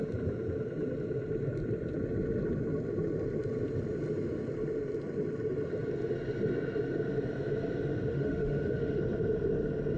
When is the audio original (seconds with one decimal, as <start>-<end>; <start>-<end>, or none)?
0.0-8.1; 9.0-10.0